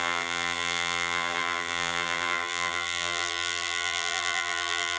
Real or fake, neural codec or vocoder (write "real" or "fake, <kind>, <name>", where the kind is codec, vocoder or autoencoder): fake, vocoder, BigVGAN v2